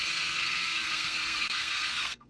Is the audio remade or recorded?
remade